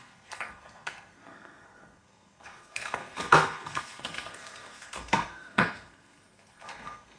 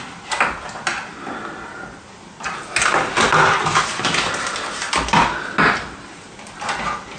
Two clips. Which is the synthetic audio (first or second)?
first